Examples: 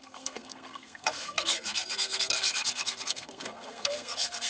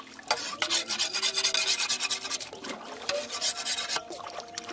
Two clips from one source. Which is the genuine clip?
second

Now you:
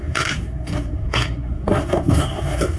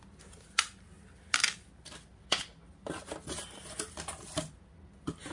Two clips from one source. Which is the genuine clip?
second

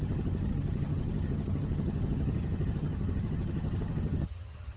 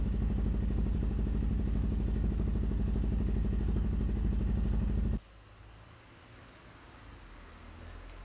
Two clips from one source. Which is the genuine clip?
second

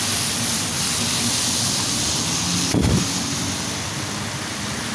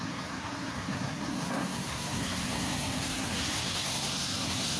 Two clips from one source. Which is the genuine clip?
first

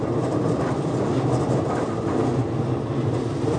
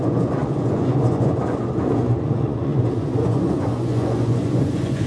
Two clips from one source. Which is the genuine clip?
first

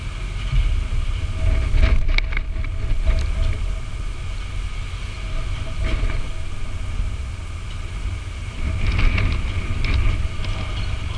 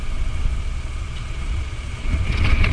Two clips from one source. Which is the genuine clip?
first